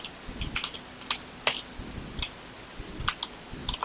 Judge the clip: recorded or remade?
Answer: recorded